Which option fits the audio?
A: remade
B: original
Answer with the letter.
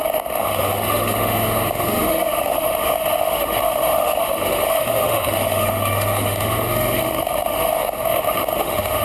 A